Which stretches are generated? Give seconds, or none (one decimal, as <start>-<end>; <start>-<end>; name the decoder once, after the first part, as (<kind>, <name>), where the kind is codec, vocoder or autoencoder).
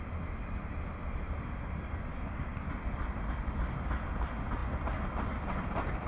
2.1-2.7 (codec, DAC)